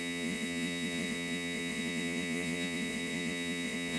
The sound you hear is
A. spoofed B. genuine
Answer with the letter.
A